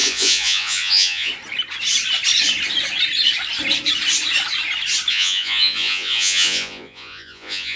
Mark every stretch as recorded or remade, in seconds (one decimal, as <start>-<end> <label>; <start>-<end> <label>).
0.0-1.3 remade; 1.3-5.1 recorded; 5.1-7.8 remade